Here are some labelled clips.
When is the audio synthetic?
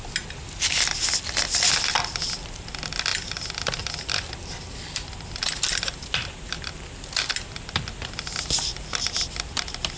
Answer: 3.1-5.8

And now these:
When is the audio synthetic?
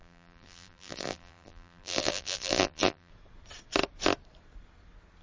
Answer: 0.0-3.1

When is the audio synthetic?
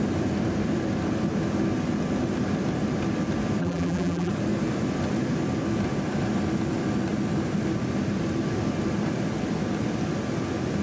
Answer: 3.6-4.3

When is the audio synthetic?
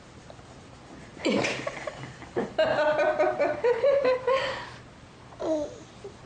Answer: 3.0-4.4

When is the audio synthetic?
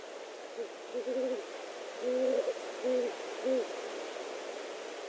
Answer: none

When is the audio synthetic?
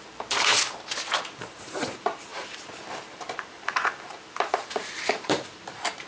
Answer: 0.0-0.5; 1.2-6.1